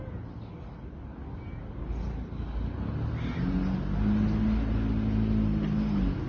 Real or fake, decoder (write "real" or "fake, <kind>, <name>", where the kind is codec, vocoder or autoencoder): real